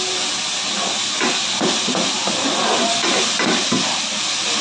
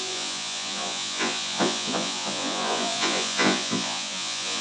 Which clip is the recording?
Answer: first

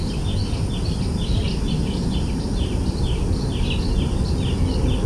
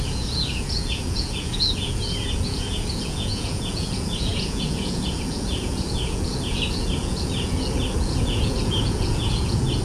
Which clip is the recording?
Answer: first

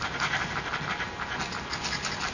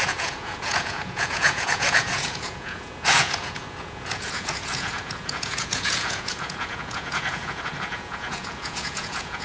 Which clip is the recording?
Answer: first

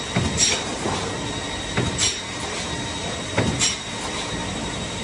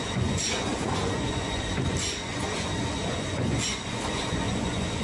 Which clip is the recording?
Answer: first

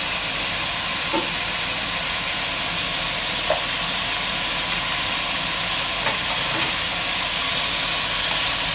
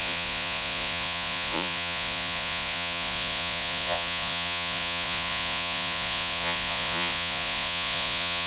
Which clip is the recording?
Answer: first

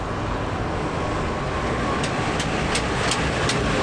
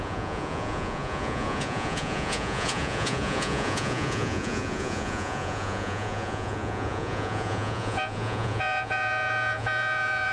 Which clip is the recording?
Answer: first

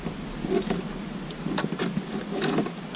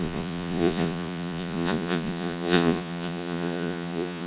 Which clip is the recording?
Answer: first